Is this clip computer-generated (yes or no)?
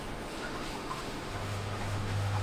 yes